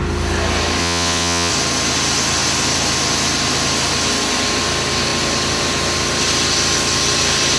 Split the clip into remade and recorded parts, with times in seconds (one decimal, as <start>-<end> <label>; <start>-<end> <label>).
0.0-0.8 recorded; 0.8-1.5 remade; 1.5-7.6 recorded